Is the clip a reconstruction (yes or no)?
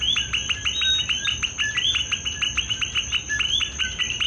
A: no